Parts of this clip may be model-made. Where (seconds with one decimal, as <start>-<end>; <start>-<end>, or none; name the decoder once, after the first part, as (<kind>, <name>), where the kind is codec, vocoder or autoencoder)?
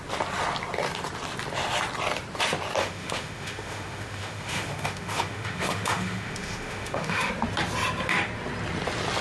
2.8-7.3 (autoencoder, DAC-VAE)